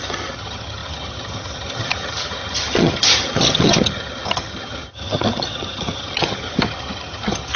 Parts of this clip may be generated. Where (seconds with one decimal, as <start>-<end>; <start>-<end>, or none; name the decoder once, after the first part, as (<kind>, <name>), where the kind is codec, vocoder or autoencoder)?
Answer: 0.0-7.6 (vocoder, HiFi-GAN)